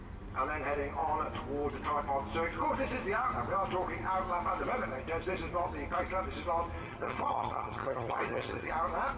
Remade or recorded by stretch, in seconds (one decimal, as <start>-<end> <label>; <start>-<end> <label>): 0.0-6.8 recorded; 6.8-8.7 remade; 8.7-9.2 recorded